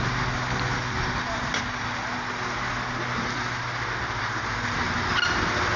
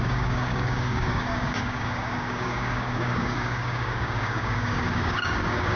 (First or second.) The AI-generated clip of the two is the second